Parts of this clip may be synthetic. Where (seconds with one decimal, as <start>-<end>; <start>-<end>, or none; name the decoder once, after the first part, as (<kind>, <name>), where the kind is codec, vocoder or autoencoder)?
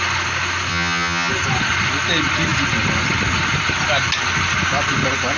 0.7-1.3 (vocoder, HiFi-GAN)